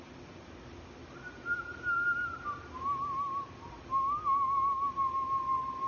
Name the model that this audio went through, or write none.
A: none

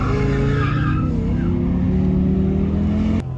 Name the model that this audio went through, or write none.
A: none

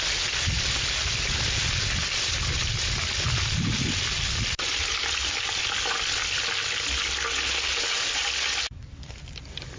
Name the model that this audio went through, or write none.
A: none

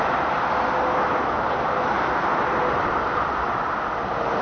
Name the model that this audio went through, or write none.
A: none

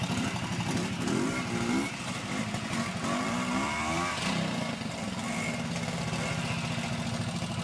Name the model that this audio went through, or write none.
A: none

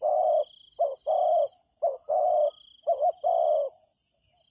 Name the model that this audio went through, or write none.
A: none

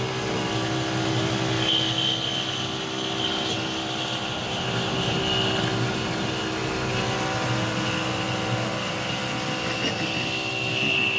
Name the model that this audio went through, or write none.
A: none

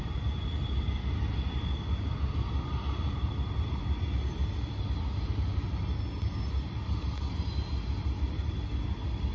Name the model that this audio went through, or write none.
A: none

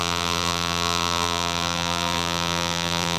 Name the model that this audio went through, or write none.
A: vocoder, BigVGAN v2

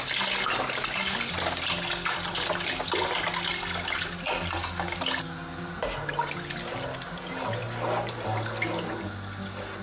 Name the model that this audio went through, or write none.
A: none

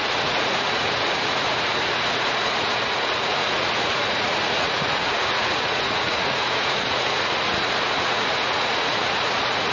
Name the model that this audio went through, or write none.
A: vocoder, Vocos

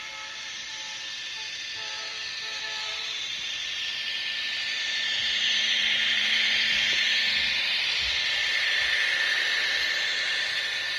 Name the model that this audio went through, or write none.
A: vocoder, BigVGAN v2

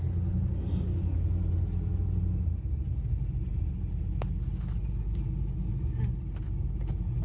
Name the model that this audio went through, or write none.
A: none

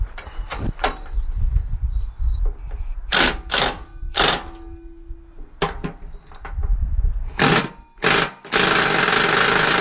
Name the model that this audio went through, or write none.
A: none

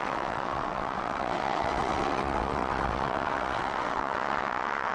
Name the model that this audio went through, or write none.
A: vocoder, WaveNeXt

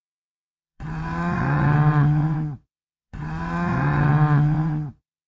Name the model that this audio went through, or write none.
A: vocoder, WaveNeXt